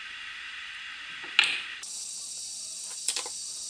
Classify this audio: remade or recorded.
recorded